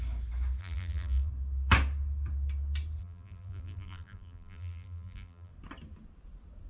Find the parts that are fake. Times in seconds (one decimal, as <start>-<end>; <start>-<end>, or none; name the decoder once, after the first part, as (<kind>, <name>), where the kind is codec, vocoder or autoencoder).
0.6-1.3 (vocoder, BigVGAN v2); 3.0-5.5